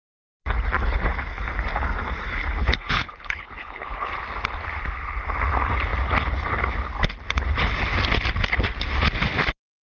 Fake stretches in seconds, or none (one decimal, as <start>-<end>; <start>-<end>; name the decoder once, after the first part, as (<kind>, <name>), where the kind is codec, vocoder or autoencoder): 2.6-4.1 (codec, HILCodec)